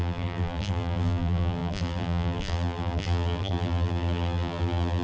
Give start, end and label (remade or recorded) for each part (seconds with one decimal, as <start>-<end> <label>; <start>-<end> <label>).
0.0-5.0 remade